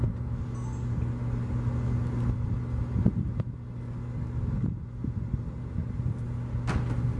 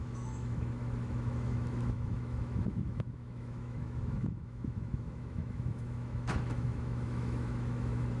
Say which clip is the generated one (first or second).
second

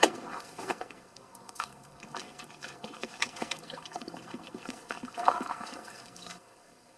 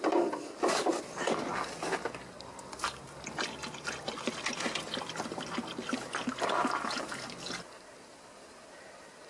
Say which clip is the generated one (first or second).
first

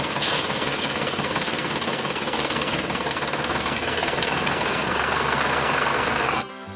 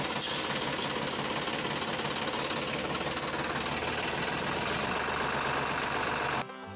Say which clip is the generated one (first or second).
first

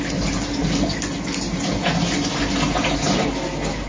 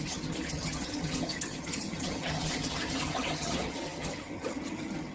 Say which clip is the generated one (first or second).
second